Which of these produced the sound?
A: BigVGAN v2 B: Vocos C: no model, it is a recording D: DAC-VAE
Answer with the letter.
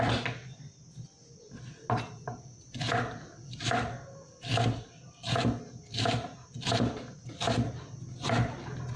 C